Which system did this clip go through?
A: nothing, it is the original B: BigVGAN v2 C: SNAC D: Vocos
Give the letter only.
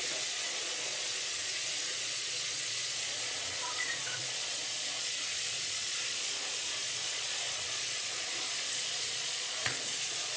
D